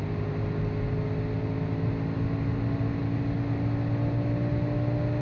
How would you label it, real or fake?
real